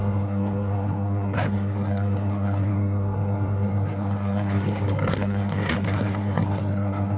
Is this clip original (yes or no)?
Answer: no